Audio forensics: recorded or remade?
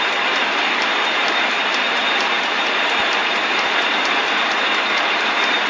remade